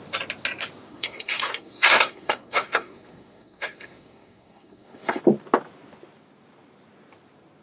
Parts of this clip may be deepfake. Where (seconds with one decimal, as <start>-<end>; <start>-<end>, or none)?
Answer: 0.9-5.2